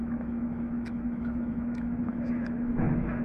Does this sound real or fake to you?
fake